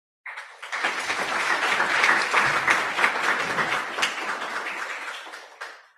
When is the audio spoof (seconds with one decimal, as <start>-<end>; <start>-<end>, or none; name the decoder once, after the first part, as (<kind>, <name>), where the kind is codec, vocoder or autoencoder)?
none